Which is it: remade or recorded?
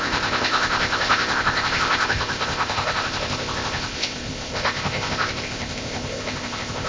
remade